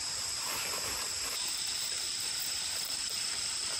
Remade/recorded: remade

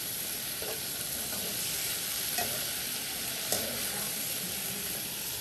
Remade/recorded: remade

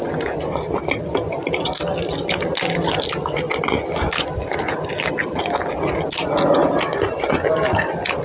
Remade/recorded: recorded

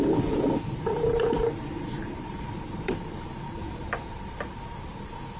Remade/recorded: remade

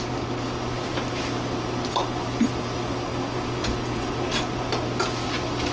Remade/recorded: recorded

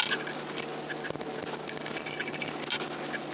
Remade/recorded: recorded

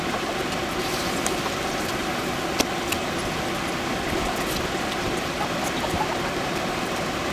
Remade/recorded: recorded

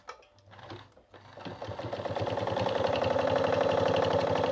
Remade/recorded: recorded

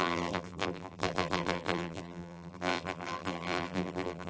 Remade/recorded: remade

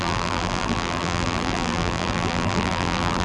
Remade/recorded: remade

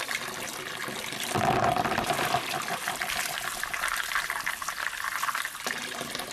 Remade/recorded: remade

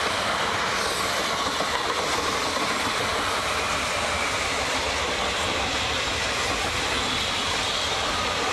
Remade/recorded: remade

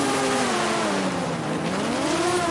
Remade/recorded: remade